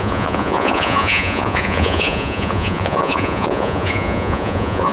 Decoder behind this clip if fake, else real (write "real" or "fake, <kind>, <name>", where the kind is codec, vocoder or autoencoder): fake, vocoder, Vocos